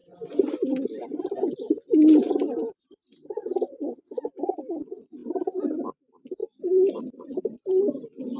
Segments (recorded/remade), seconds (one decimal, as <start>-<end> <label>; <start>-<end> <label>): 0.0-3.4 recorded; 3.4-4.2 remade; 4.2-8.4 recorded